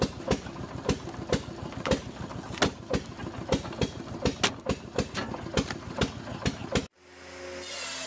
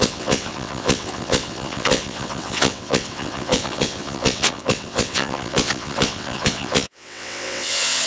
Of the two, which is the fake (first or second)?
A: second